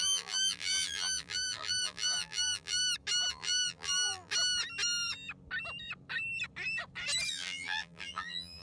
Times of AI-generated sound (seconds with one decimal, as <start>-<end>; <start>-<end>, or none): 0.0-2.8; 3.3-4.3; 7.3-8.6